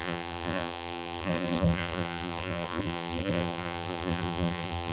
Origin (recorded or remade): remade